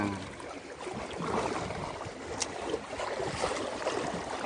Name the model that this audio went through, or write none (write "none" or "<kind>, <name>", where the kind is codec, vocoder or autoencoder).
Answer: none